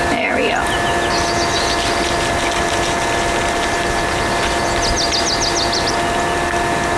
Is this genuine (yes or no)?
yes